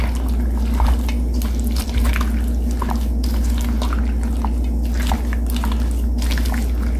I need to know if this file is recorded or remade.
recorded